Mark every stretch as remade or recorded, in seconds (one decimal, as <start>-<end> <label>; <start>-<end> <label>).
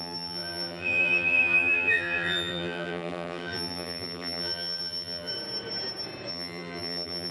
0.0-5.3 remade; 5.3-6.3 recorded; 6.3-7.3 remade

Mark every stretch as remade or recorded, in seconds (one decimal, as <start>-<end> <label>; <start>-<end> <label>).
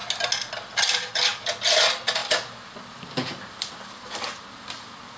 0.0-0.6 recorded; 0.6-5.2 remade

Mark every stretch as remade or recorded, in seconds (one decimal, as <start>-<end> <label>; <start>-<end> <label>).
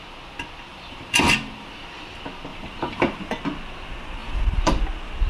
0.0-0.7 recorded; 0.7-1.8 remade; 1.8-2.5 recorded; 2.5-3.2 remade; 3.2-4.2 recorded; 4.2-4.7 remade; 4.7-5.3 recorded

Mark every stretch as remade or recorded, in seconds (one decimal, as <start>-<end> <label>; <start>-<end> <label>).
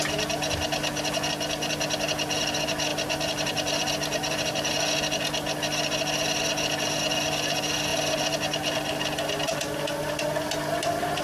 0.0-2.9 recorded; 2.9-4.7 remade; 4.7-11.2 recorded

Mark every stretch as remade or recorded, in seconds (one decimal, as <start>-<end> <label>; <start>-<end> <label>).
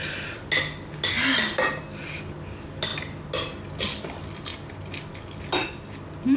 0.0-6.4 recorded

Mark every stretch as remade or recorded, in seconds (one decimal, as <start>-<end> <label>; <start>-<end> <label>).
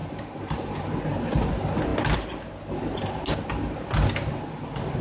0.0-1.0 remade; 1.0-5.0 recorded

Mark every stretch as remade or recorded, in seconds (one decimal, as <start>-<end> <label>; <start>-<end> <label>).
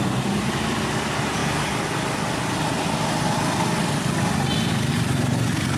0.0-5.8 recorded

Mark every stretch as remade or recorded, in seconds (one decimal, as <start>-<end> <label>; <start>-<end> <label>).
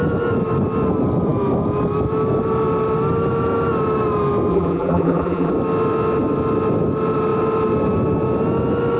0.0-4.5 recorded; 4.5-5.5 remade; 5.5-9.0 recorded